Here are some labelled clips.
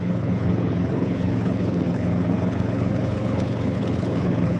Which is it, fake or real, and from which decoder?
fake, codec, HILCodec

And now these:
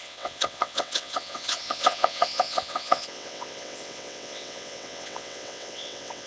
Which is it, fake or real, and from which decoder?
fake, vocoder, WaveNeXt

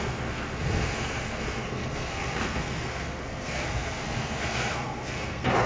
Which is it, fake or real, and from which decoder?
fake, codec, SNAC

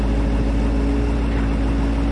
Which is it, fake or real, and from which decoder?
real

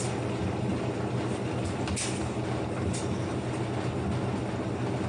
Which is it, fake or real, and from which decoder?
real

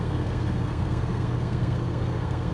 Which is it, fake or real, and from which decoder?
fake, codec, SNAC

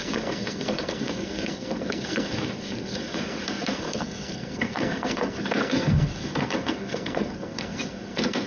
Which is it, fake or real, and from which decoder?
fake, codec, SNAC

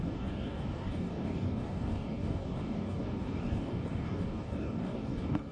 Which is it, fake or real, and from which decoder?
fake, codec, DAC